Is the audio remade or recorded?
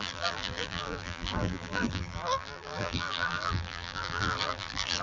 remade